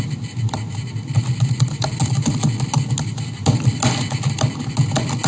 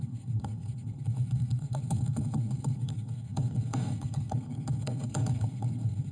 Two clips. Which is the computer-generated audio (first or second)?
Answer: second